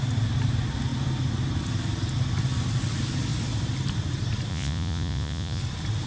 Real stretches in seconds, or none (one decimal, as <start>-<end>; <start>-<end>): 0.0-4.5; 5.6-6.1